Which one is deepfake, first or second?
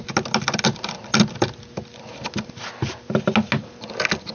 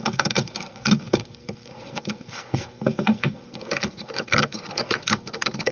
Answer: second